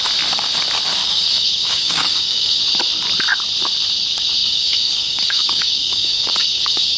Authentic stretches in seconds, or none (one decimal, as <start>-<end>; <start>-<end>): 0.0-1.0; 2.6-4.4